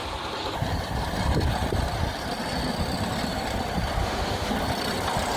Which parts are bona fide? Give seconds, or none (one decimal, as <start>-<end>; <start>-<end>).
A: 0.0-4.0; 4.5-5.4